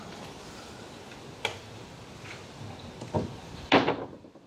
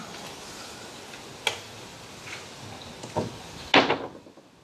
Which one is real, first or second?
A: second